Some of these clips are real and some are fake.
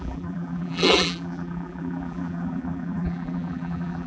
fake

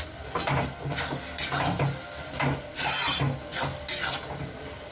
real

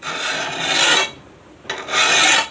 real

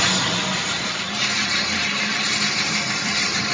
fake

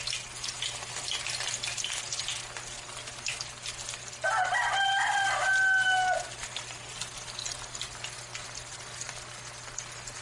real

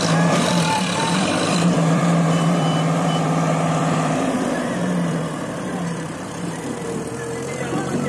fake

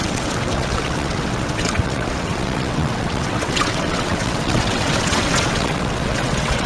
fake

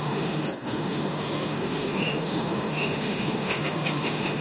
fake